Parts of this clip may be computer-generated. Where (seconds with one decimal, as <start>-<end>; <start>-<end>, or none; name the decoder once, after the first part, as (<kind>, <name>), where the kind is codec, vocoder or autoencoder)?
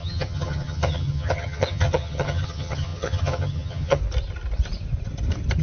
0.0-4.0 (vocoder, HiFi-GAN)